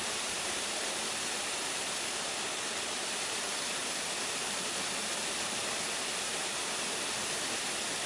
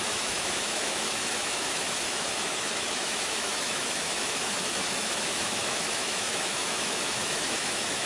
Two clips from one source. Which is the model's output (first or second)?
second